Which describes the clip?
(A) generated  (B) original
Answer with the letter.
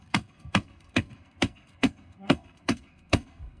A